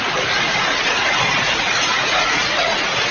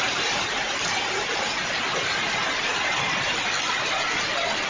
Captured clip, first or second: second